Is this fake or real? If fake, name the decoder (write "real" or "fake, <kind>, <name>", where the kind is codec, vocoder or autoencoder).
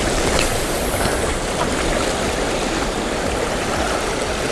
real